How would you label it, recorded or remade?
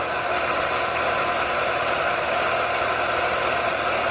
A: recorded